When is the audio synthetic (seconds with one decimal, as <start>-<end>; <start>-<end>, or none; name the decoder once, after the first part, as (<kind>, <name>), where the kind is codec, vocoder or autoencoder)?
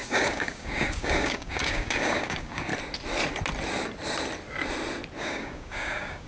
0.0-2.7 (codec, DAC); 5.2-6.3